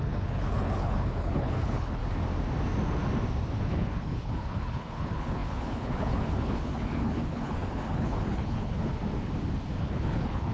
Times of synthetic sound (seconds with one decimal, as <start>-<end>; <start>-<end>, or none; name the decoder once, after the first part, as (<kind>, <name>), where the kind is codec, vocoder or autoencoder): 0.0-2.0 (codec, HILCodec); 3.6-9.0; 9.8-10.5